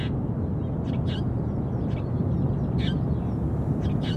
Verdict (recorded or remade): recorded